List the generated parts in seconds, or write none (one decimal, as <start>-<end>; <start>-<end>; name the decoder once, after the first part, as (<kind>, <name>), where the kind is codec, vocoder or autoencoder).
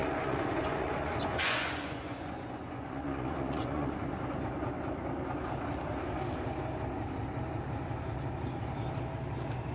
0.0-4.0 (vocoder, Vocos)